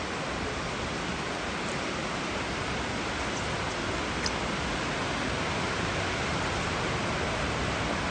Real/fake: real